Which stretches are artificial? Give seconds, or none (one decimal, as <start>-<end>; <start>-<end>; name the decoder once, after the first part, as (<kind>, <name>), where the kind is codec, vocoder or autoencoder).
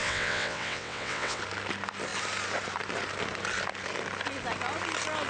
0.0-1.4 (vocoder, WaveNeXt)